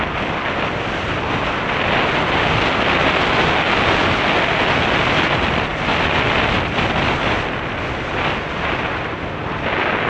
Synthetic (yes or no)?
no